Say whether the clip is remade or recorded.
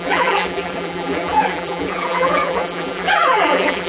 remade